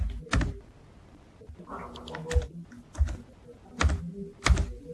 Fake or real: real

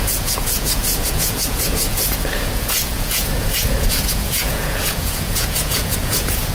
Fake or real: fake